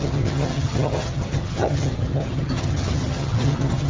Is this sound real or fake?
fake